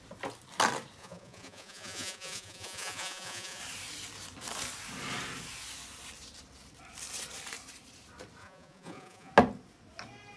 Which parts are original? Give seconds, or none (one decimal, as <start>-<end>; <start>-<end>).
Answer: 0.0-1.0; 3.6-8.4; 9.3-10.4